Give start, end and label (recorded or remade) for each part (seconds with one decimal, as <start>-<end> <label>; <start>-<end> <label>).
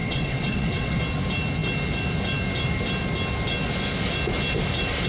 0.0-1.0 remade; 1.0-5.1 recorded